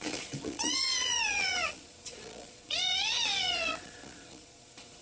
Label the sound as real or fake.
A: fake